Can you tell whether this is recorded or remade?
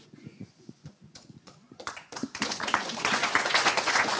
remade